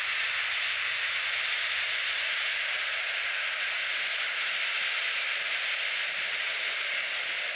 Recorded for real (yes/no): yes